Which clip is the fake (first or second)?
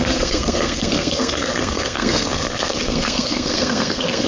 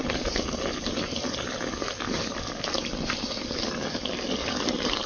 first